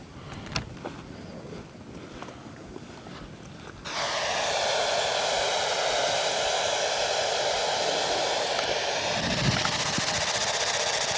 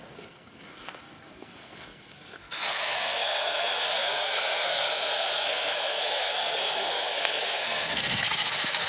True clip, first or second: first